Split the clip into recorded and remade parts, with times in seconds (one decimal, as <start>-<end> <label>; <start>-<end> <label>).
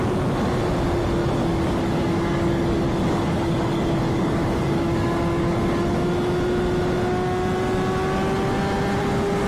0.0-1.2 recorded; 1.2-5.8 remade; 5.8-9.5 recorded